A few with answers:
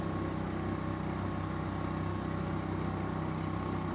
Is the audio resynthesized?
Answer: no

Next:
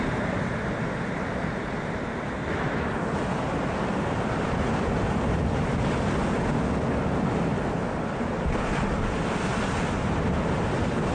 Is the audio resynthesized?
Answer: no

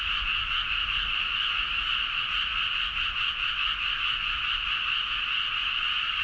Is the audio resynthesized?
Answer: yes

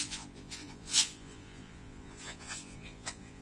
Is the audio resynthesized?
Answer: yes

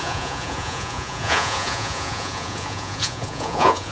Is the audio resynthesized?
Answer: yes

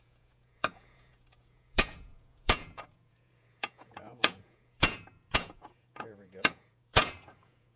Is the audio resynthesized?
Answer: yes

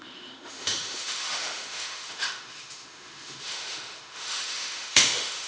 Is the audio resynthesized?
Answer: yes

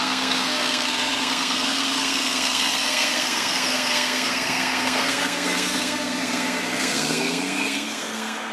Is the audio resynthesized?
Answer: yes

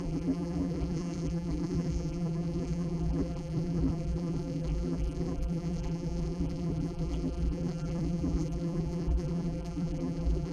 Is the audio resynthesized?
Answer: yes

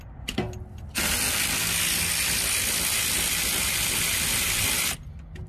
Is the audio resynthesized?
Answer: no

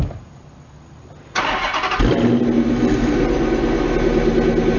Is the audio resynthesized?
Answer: no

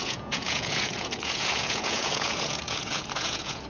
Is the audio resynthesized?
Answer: yes